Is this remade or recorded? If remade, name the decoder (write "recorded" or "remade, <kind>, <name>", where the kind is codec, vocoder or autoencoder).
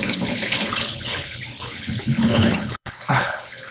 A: remade, codec, HILCodec